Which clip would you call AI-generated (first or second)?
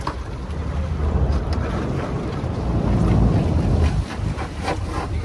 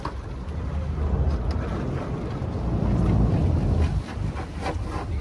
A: first